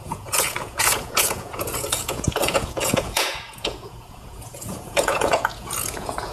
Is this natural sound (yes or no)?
no